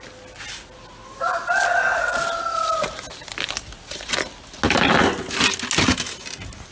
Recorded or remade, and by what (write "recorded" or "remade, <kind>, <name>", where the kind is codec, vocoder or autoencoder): recorded